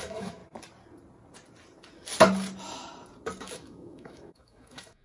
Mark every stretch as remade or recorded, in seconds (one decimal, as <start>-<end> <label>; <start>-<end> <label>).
0.0-0.4 remade; 0.4-3.4 recorded; 3.4-5.0 remade